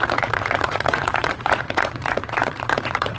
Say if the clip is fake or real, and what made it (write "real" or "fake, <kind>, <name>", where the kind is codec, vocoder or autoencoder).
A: fake, vocoder, Vocos